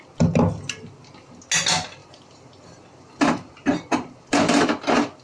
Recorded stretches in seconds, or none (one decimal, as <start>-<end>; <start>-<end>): 0.0-2.0; 4.6-5.2